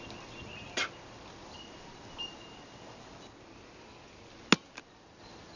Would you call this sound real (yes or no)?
yes